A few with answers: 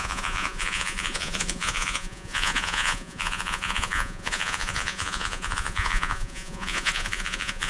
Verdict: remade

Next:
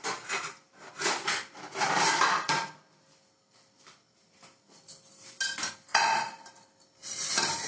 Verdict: recorded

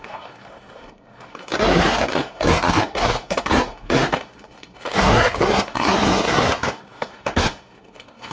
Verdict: remade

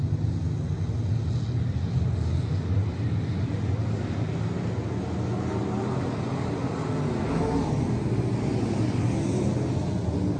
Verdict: recorded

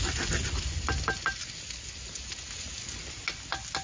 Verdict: recorded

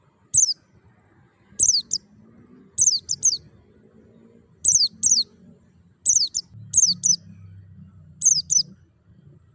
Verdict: recorded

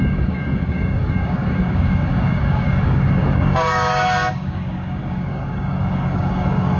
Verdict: remade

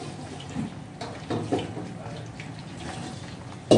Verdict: recorded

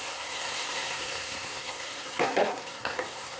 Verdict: remade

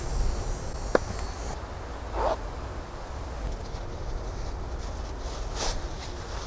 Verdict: recorded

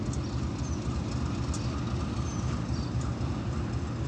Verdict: recorded